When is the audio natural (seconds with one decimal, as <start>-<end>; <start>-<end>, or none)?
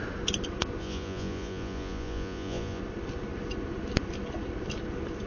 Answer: 0.0-0.8; 2.8-5.3